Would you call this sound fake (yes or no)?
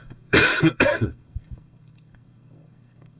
yes